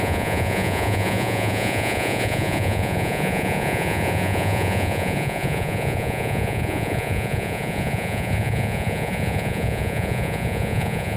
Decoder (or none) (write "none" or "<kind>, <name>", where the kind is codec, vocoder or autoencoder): vocoder, Vocos